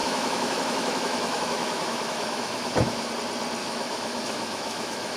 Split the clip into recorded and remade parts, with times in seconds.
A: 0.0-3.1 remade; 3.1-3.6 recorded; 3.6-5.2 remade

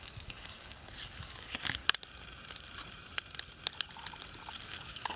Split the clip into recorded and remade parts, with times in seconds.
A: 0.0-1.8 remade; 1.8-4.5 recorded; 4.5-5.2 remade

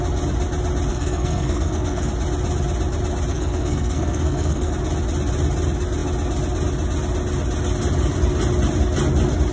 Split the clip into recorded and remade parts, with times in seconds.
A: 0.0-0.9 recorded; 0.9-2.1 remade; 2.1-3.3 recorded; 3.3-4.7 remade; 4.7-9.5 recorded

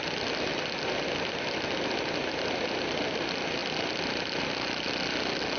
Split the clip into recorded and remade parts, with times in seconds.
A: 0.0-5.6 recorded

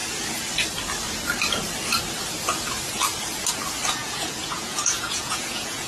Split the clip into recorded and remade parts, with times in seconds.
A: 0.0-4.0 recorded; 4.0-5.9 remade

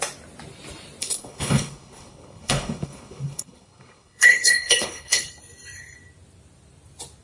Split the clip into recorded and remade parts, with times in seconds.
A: 0.0-1.0 recorded; 1.0-5.3 remade; 5.3-7.2 recorded